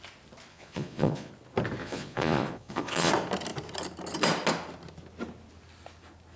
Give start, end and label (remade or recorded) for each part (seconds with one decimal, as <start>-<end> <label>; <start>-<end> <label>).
0.0-0.5 recorded; 0.5-1.3 remade; 1.3-1.8 recorded; 1.8-3.1 remade; 3.1-6.4 recorded